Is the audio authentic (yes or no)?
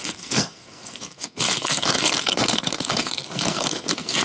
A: no